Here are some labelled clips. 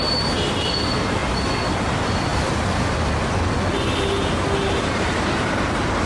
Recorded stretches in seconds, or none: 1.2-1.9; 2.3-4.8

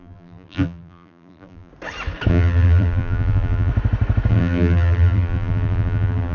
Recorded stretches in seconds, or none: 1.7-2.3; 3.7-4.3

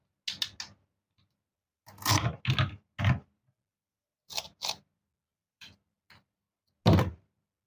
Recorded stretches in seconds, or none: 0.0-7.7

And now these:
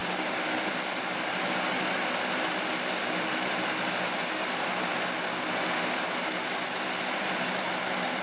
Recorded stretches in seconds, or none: 0.0-8.2

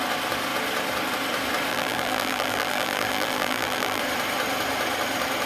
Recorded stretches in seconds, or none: 0.0-1.7; 4.0-5.5